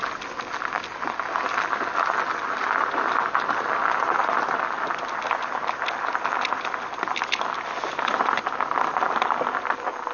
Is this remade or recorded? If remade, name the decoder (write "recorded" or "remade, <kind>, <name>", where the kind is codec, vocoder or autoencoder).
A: recorded